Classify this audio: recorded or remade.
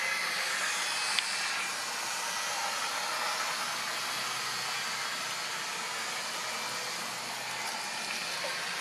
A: recorded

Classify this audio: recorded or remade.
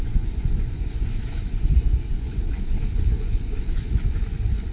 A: remade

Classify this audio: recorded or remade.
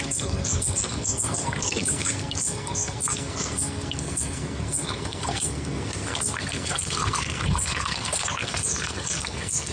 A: remade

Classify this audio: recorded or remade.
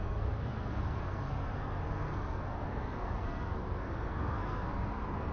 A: remade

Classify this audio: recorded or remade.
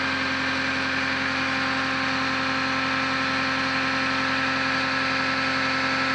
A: recorded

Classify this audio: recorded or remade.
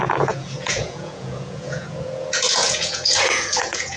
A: remade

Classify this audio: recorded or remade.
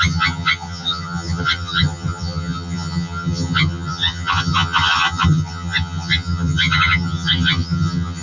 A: remade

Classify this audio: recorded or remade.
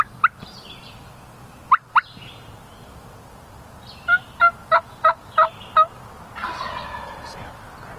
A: recorded